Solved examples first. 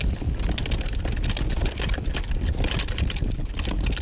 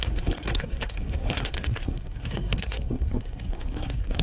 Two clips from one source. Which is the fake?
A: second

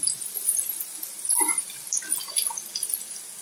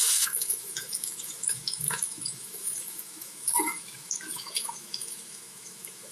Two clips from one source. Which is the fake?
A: second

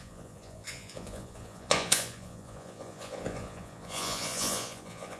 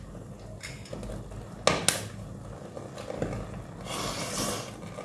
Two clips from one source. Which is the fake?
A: first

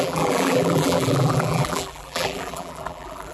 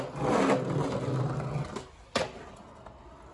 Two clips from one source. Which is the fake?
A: first